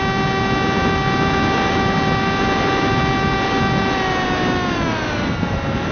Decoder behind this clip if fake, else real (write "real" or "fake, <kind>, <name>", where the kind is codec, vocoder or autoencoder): real